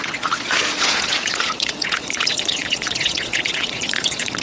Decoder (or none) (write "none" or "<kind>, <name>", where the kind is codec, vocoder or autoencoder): vocoder, Vocos